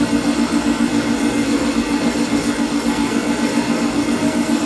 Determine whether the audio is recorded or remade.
remade